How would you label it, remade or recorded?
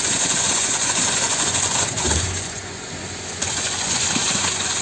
remade